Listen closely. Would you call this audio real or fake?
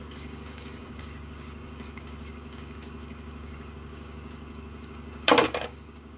fake